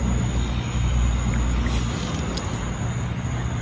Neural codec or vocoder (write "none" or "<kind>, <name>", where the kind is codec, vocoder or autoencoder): none